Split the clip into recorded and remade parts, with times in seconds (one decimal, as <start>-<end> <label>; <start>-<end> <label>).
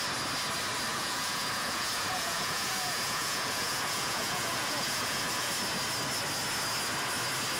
0.0-0.9 recorded; 0.9-5.5 remade; 5.5-7.6 recorded